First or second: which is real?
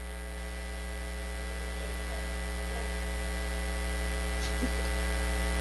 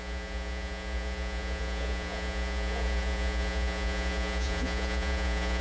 first